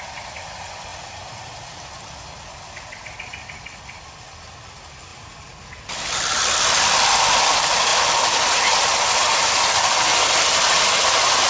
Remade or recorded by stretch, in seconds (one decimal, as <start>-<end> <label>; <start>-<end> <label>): 0.0-11.5 recorded